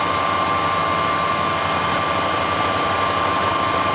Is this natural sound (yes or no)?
yes